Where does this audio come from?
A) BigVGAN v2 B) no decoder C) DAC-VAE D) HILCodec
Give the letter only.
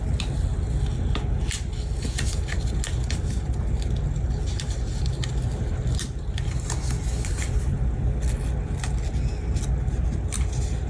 B